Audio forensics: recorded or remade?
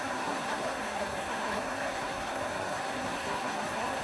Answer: remade